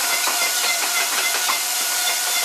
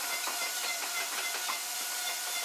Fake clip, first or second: first